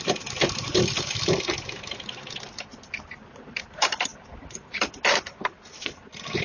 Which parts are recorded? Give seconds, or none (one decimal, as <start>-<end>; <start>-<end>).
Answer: 0.0-6.4

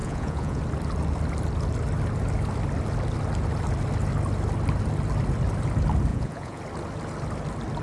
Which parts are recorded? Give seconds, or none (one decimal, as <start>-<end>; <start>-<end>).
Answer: 0.6-6.1; 6.6-7.8

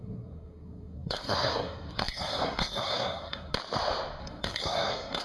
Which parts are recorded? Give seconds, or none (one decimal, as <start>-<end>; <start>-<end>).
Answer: 3.5-4.2

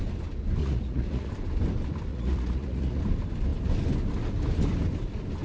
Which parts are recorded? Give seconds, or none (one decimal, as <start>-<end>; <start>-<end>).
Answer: 0.0-0.6; 1.3-2.1; 3.0-5.4

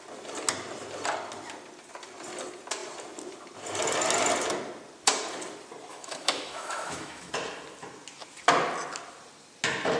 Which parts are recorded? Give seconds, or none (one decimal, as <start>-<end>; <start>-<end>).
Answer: 0.0-5.9; 7.3-10.0

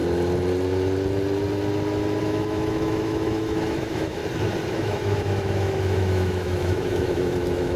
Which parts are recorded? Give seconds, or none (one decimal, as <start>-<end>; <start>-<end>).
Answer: 0.0-2.2; 4.2-4.7